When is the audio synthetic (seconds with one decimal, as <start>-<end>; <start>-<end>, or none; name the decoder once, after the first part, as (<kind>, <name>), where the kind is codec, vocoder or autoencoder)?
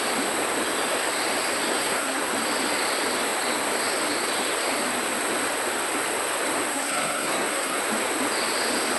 1.7-2.3 (codec, SNAC); 6.7-7.8